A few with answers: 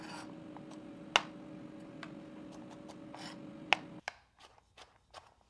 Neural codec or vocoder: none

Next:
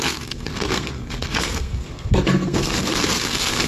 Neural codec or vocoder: codec, SNAC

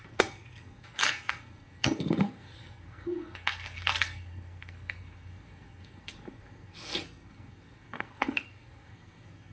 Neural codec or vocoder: codec, SNAC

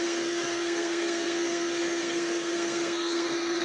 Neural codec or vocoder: codec, SNAC